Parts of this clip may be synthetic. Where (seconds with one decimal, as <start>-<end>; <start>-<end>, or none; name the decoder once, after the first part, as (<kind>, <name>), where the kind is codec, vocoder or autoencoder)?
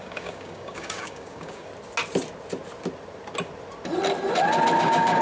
0.0-1.7 (codec, DAC); 4.8-5.2